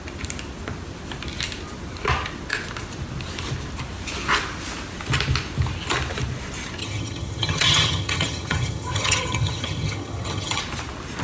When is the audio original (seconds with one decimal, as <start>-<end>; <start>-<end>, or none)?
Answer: 0.0-6.8; 10.6-11.2